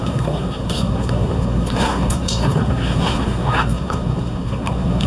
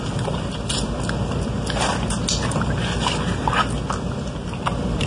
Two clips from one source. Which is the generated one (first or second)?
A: first